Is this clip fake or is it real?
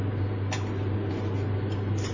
real